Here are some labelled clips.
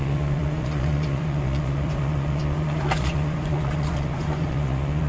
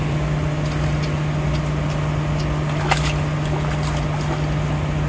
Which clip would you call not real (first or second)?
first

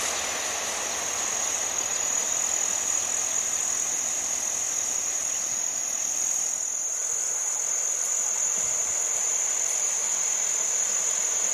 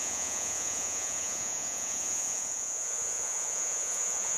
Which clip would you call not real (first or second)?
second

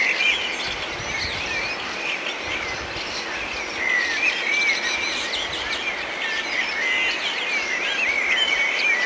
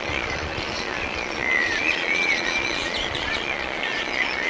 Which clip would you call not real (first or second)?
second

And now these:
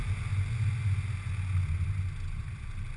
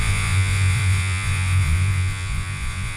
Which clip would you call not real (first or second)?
second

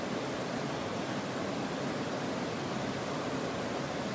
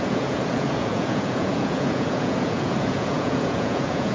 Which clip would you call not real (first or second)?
second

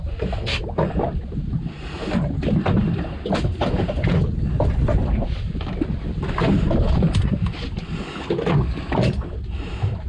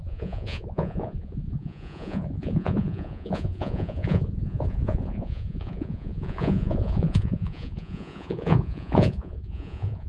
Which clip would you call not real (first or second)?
second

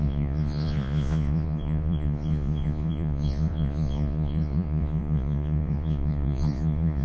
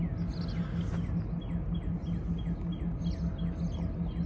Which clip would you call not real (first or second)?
first